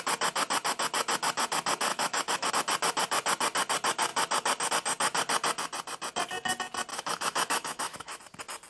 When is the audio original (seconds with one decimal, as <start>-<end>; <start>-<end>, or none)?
0.0-1.9; 2.5-6.9; 8.2-8.7